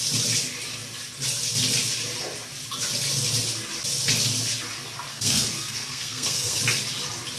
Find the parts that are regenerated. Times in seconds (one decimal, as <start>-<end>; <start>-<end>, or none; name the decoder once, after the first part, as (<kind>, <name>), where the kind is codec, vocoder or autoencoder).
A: 5.1-6.6 (codec, SNAC)